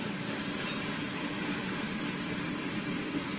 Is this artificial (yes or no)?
no